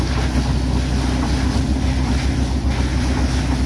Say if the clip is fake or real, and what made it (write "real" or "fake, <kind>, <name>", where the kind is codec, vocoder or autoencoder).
real